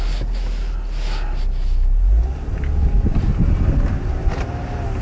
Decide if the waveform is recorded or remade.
recorded